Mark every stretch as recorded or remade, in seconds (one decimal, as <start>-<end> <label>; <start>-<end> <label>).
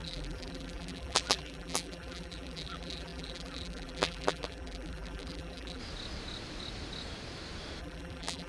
0.0-5.8 remade; 5.8-7.8 recorded; 7.8-8.5 remade